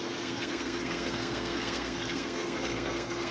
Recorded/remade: remade